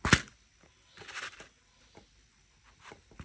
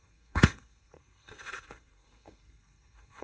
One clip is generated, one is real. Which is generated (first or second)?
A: second